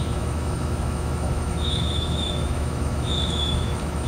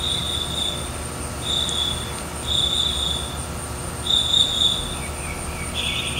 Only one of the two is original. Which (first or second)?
second